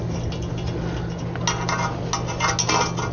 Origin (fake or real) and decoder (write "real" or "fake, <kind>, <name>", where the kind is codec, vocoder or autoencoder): real